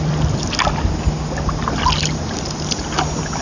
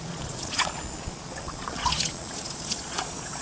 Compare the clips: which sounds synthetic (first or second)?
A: second